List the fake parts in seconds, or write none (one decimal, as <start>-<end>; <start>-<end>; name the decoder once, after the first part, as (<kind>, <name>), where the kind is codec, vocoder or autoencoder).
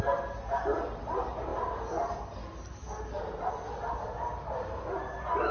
none